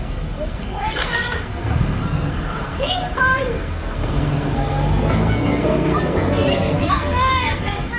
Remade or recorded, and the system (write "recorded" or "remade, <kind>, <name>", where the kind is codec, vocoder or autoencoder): remade, codec, SNAC